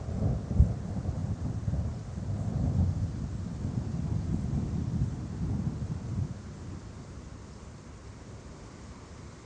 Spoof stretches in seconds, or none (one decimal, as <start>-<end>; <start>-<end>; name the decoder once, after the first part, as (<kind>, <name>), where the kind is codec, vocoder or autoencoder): none